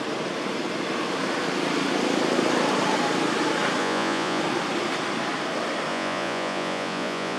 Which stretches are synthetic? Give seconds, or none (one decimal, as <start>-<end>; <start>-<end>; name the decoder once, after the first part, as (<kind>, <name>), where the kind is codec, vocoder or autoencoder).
3.8-4.4 (vocoder, Vocos); 5.9-7.4

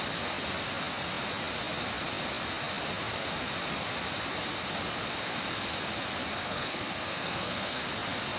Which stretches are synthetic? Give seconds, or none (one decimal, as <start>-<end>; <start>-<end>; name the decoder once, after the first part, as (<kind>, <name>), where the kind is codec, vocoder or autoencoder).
6.3-7.8 (codec, SNAC)

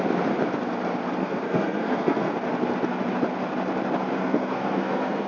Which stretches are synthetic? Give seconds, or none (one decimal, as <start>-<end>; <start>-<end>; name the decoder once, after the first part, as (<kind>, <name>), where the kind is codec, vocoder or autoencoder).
1.2-2.3 (codec, SNAC); 4.2-5.3

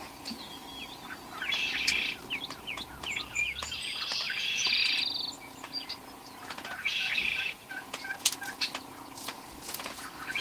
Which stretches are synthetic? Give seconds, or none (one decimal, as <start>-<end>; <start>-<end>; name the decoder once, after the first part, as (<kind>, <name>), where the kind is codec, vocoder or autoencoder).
0.0-0.6 (vocoder, Vocos); 2.6-4.8; 5.3-10.4

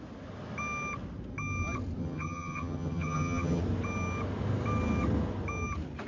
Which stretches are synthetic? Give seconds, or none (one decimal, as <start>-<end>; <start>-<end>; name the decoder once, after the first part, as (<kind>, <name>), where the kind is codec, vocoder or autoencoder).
2.0-3.6 (vocoder, HiFi-GAN)

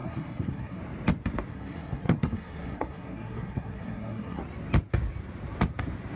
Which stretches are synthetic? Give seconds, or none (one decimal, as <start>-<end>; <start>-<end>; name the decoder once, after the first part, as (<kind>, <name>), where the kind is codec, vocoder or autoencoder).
0.0-0.8 (codec, SNAC); 1.5-4.4

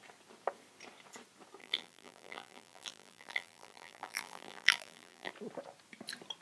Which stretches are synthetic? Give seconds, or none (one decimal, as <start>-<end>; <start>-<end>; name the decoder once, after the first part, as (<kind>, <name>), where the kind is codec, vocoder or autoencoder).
1.6-5.3 (vocoder, BigVGAN v2)